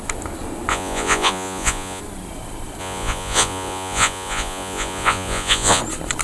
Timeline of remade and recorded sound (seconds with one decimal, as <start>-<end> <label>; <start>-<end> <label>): 0.0-0.7 recorded; 0.7-2.0 remade; 2.0-2.8 recorded; 2.8-5.8 remade; 5.8-6.2 recorded